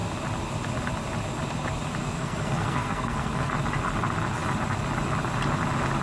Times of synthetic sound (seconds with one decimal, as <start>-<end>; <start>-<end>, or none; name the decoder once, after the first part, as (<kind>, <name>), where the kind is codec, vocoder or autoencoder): 2.0-3.5 (codec, SNAC)